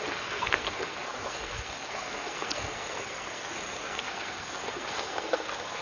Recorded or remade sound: remade